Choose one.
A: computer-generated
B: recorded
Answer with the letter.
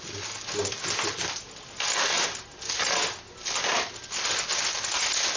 B